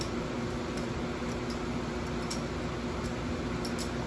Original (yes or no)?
yes